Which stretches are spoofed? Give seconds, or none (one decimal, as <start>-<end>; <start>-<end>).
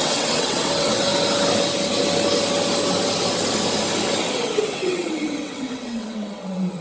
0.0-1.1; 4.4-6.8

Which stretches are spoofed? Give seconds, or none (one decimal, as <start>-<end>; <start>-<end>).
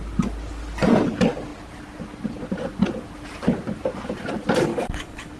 4.7-5.4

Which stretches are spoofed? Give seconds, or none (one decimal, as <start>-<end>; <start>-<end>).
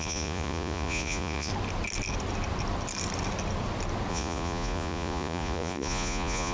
0.0-1.5; 4.1-6.5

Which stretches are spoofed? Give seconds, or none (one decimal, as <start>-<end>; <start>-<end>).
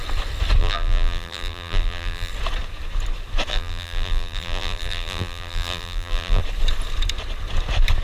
0.6-2.3; 3.5-6.4